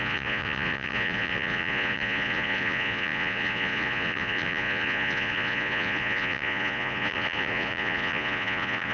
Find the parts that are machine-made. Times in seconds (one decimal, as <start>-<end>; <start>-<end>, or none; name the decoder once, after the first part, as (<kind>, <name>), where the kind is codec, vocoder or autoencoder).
0.0-8.9 (vocoder, Vocos)